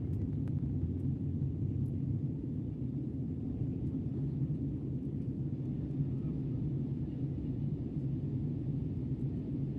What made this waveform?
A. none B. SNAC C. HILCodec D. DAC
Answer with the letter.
A